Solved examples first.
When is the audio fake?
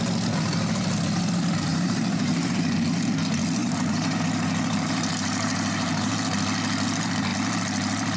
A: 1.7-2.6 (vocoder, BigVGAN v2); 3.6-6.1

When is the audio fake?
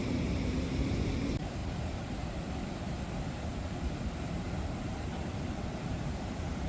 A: 0.0-1.1 (vocoder, BigVGAN v2); 1.6-2.5; 3.5-6.0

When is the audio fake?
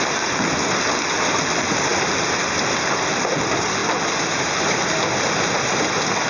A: none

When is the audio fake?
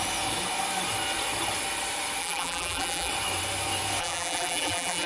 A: 2.2-3.1 (vocoder, BigVGAN v2); 4.0-5.1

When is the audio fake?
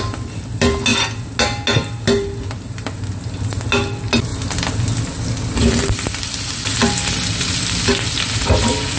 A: none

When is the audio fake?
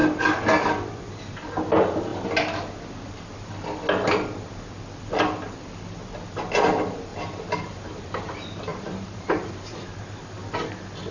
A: 7.1-8.2 (vocoder, BigVGAN v2); 8.7-10.0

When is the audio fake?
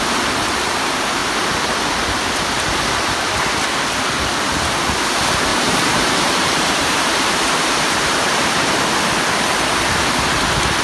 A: 5.5-8.7 (vocoder, BigVGAN v2)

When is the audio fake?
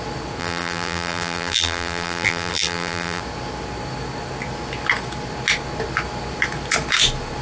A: 0.4-3.2 (vocoder, BigVGAN v2)